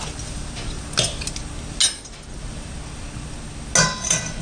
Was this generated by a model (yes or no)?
no